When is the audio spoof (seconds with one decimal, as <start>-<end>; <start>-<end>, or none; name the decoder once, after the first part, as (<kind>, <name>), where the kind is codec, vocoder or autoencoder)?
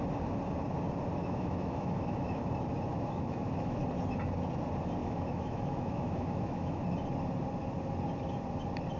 1.2-2.4 (autoencoder, DAC-VAE); 2.9-3.8; 5.0-6.8